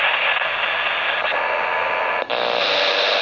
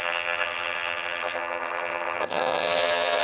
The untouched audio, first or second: first